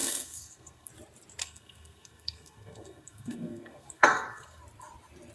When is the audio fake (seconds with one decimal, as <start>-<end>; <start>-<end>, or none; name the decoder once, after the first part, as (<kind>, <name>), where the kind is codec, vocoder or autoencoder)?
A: 0.0-0.9 (codec, SNAC); 1.4-4.6